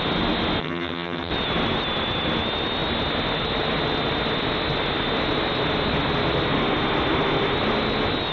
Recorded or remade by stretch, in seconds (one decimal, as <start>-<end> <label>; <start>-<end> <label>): 0.0-0.6 recorded; 0.6-1.3 remade; 1.3-8.3 recorded